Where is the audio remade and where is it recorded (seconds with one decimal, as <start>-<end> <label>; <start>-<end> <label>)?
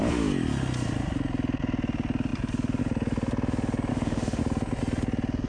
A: 0.0-3.9 recorded; 3.9-4.4 remade; 4.4-5.5 recorded